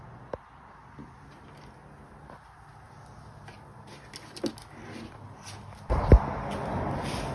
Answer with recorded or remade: recorded